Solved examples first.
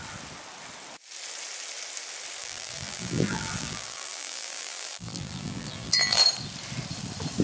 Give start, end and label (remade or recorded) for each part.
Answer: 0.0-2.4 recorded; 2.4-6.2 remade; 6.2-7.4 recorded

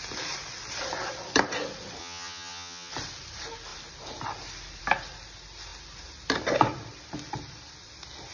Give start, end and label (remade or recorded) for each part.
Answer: 0.0-2.0 recorded; 2.0-2.9 remade; 2.9-8.3 recorded

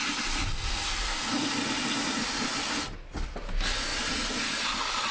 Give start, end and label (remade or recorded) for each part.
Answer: 0.0-5.1 recorded

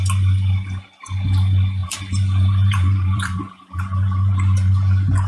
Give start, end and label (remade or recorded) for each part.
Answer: 0.0-1.8 recorded; 1.8-4.7 remade; 4.7-5.3 recorded

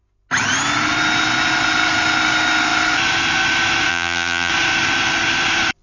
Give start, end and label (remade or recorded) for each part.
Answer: 0.0-3.9 recorded; 3.9-4.5 remade; 4.5-5.8 recorded

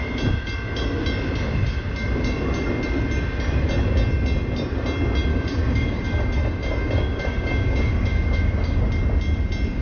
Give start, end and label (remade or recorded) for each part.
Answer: 0.0-5.3 recorded; 5.3-8.8 remade; 8.8-9.8 recorded